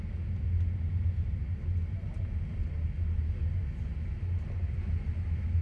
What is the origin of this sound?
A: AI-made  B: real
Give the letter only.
B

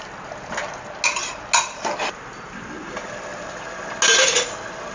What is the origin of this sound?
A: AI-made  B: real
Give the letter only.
B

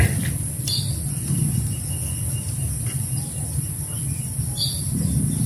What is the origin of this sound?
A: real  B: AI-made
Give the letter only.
A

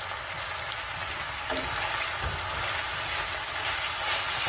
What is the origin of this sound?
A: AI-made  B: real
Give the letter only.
B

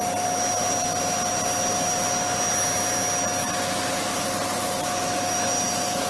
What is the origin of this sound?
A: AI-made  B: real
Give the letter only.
B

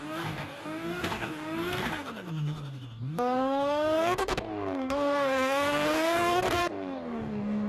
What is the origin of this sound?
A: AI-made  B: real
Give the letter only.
A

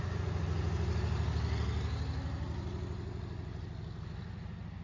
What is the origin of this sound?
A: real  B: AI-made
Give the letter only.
A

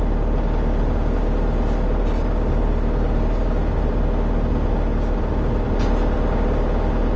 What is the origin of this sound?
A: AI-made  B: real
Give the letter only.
B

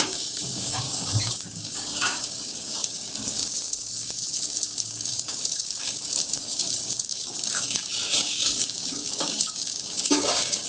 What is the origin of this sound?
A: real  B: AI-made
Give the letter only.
B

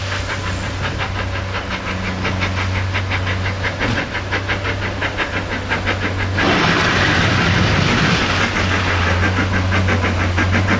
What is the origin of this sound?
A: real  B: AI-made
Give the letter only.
A